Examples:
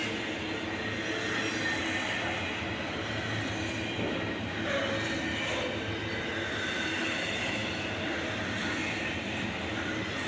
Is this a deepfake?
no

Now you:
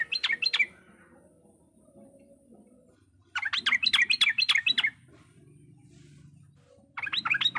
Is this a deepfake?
no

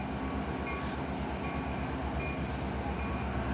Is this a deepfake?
no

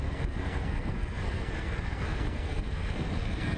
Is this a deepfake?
yes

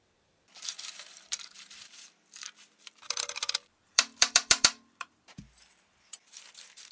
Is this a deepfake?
yes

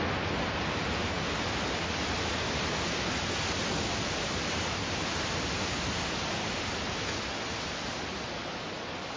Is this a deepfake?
no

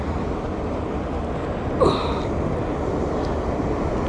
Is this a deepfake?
no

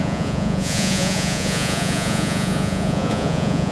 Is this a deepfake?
yes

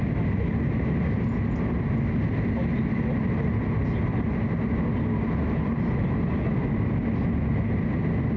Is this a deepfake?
no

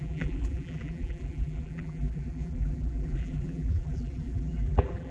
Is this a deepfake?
yes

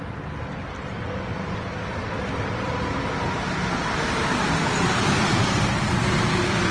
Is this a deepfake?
no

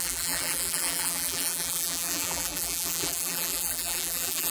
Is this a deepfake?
yes